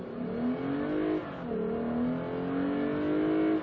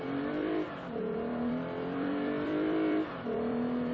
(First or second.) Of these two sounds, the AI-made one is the second